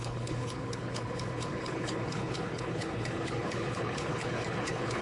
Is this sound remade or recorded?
remade